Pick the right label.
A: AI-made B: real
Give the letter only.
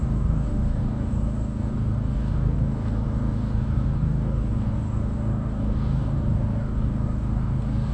A